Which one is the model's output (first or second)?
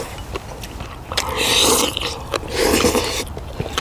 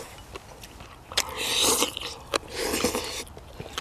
first